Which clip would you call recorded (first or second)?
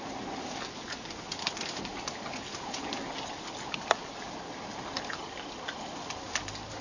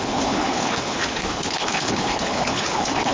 first